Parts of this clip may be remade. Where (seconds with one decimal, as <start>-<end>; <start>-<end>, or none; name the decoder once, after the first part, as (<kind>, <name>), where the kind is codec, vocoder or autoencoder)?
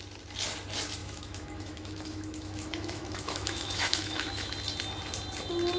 1.0-4.5 (autoencoder, DAC-VAE)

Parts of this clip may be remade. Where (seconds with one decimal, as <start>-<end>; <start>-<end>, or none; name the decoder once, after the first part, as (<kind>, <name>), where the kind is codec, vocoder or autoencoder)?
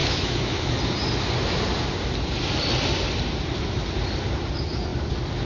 0.0-0.7 (autoencoder, DAC-VAE)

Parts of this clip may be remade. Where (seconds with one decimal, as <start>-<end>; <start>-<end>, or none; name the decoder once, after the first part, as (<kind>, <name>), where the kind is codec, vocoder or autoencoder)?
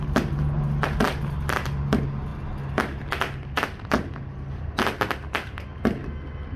none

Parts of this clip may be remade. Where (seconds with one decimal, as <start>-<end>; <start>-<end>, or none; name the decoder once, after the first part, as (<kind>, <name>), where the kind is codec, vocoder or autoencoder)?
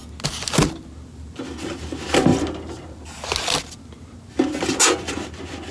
none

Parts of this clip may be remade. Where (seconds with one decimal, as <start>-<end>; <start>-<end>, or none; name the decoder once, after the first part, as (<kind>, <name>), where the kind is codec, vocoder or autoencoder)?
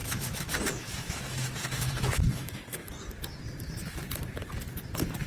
0.0-2.9 (autoencoder, DAC-VAE)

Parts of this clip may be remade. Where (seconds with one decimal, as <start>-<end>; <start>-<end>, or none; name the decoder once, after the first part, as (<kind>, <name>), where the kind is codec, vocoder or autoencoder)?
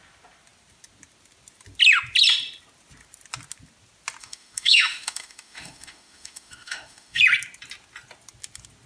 4.2-7.2 (autoencoder, DAC-VAE)